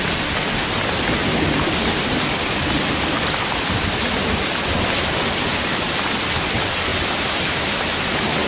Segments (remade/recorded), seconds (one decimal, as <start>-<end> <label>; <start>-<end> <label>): 0.0-1.2 recorded; 1.2-3.9 remade; 3.9-5.5 recorded; 5.5-6.2 remade; 6.2-6.9 recorded; 6.9-7.6 remade; 7.6-8.5 recorded